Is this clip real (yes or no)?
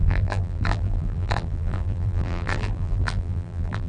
no